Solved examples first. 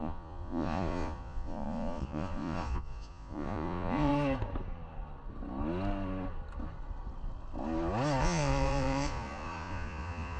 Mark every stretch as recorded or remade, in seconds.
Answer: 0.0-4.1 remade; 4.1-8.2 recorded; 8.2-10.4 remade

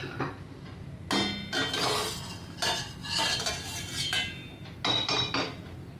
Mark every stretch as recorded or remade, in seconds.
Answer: 0.0-3.0 recorded; 3.0-3.5 remade; 3.5-6.0 recorded

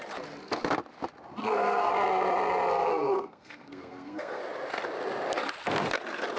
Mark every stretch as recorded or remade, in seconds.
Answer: 0.0-1.4 recorded; 1.4-1.9 remade; 1.9-2.7 recorded; 2.7-4.4 remade; 4.4-6.4 recorded

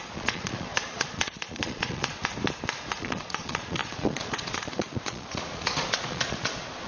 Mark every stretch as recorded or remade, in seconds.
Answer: 0.0-2.2 remade; 2.2-3.0 recorded; 3.0-6.9 remade

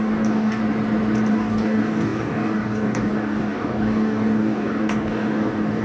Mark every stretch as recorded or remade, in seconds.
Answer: 0.0-0.6 remade; 0.6-1.3 recorded; 1.3-5.8 remade

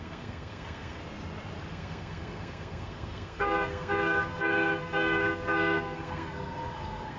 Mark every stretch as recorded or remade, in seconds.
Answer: 0.0-1.0 remade; 1.0-1.7 recorded; 1.7-7.2 remade

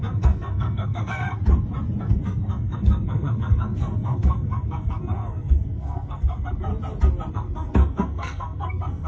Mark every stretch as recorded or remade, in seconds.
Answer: 0.0-1.4 remade; 1.4-2.0 recorded; 2.0-6.7 remade; 6.7-7.3 recorded; 7.3-9.1 remade

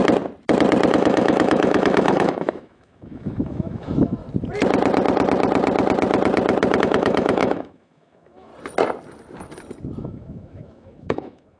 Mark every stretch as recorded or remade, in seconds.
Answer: 0.0-0.9 recorded; 0.9-4.2 remade; 4.2-6.8 recorded; 6.8-8.5 remade; 8.5-10.0 recorded; 10.0-11.6 remade